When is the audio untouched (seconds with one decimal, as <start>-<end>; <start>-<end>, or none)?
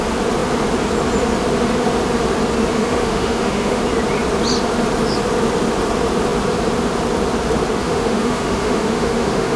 0.0-2.7; 3.8-7.8